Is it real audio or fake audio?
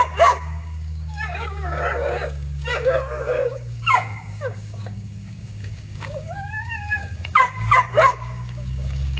fake